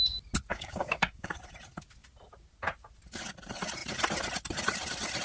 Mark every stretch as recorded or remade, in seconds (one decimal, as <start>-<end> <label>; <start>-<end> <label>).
0.0-0.5 recorded; 0.5-1.3 remade; 1.3-5.2 recorded